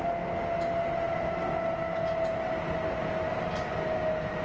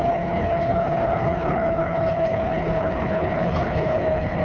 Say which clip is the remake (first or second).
second